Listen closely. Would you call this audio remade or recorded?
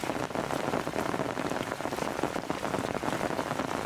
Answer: recorded